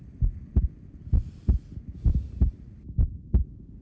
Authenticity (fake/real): real